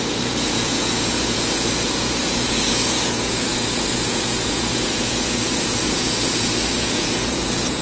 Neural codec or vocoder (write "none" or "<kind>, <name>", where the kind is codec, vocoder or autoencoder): vocoder, Vocos